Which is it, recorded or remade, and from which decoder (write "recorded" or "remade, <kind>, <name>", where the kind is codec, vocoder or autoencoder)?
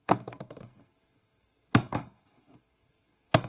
remade, codec, SNAC